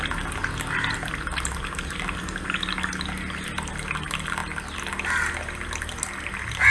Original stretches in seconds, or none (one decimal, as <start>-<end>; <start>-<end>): 0.0-6.7